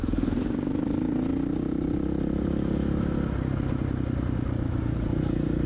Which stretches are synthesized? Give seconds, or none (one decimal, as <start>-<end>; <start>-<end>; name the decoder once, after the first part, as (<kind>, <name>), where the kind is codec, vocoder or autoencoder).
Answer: 0.0-1.3 (vocoder, BigVGAN v2); 4.7-5.7